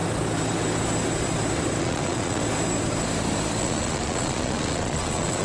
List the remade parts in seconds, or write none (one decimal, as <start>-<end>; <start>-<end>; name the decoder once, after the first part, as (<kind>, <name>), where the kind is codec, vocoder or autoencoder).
1.8-2.4 (vocoder, Vocos); 3.6-5.4